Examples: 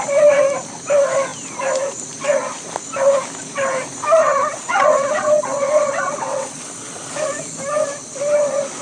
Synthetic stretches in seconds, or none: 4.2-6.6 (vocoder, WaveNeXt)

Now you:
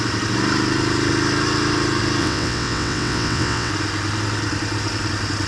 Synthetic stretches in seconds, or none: 2.2-3.7 (vocoder, WaveNeXt)

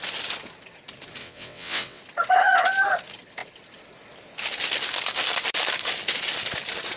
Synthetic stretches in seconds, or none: 1.2-2.0 (vocoder, WaveNeXt)

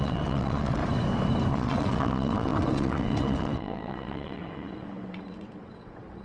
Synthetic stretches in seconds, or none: 0.0-0.8 (vocoder, WaveNeXt); 1.5-6.2

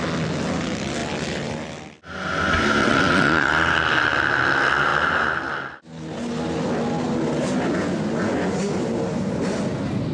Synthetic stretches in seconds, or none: 2.8-3.5 (vocoder, WaveNeXt)